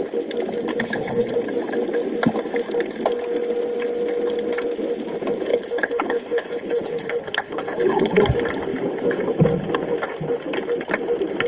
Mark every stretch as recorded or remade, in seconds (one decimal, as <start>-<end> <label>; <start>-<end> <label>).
0.0-0.7 recorded; 0.7-1.3 remade; 1.3-5.5 recorded; 5.5-8.2 remade; 8.2-11.5 recorded

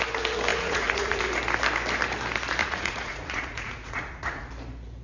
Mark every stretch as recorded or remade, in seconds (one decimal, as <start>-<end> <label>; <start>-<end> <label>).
0.0-0.5 recorded; 0.5-1.2 remade; 1.2-2.6 recorded; 2.6-4.5 remade; 4.5-5.0 recorded

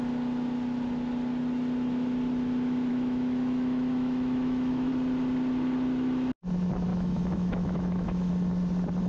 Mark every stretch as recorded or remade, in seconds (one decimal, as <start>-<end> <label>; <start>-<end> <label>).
0.0-2.9 recorded; 2.9-4.9 remade; 4.9-6.9 recorded; 6.9-8.3 remade; 8.3-9.1 recorded

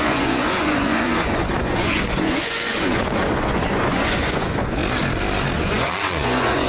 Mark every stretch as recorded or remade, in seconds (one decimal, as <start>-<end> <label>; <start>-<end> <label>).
0.0-4.8 remade; 4.8-5.6 recorded; 5.6-6.7 remade

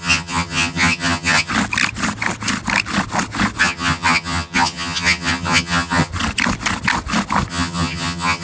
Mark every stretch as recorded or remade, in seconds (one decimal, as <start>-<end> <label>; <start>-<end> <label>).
0.0-1.5 remade; 1.5-3.6 recorded; 3.6-6.1 remade; 6.1-7.5 recorded; 7.5-8.4 remade

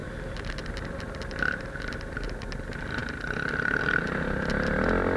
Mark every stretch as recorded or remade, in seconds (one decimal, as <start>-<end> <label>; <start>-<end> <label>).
0.0-5.2 recorded

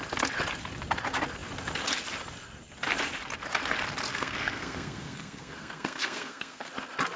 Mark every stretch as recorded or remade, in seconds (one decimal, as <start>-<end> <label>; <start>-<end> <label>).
0.0-4.1 recorded; 4.1-6.7 remade; 6.7-7.2 recorded